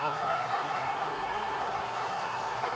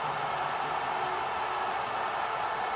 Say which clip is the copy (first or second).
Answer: first